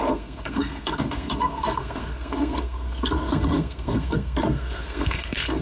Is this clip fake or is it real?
fake